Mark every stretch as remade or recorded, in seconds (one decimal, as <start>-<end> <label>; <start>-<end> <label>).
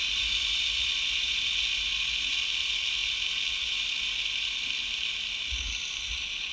0.0-6.5 recorded